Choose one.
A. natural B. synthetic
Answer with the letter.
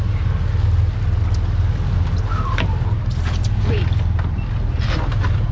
A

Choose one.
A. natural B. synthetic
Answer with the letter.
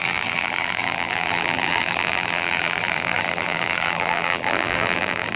B